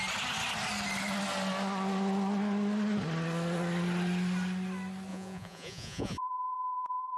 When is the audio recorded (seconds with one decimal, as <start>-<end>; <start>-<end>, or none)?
0.0-5.1